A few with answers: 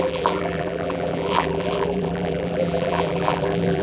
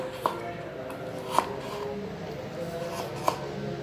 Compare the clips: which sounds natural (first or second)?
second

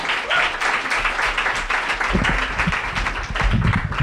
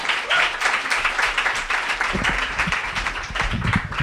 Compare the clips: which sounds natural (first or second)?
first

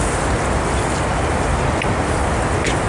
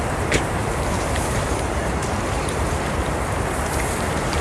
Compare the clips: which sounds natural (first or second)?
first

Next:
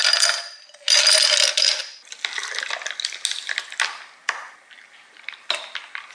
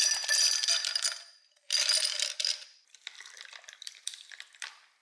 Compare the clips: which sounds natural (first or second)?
first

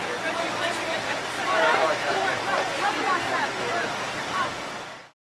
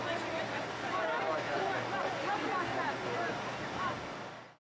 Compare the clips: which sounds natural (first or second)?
second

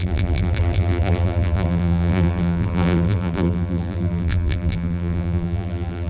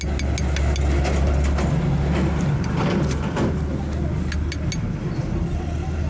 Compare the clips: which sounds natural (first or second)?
second